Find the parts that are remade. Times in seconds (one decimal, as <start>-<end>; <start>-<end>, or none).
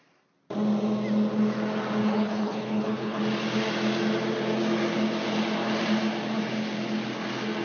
2.0-3.2